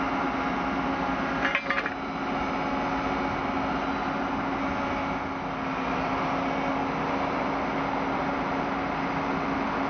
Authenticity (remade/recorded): recorded